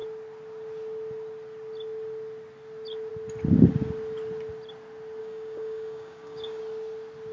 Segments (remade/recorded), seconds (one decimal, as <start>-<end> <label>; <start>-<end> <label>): 0.0-5.2 recorded; 5.2-6.6 remade; 6.6-7.3 recorded